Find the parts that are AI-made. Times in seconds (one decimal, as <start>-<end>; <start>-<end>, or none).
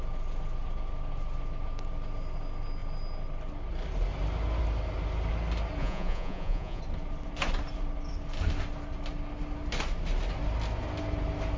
5.8-6.8